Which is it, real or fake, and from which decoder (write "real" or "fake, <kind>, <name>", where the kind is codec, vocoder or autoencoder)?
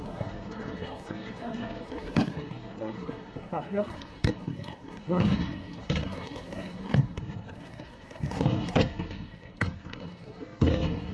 fake, codec, SNAC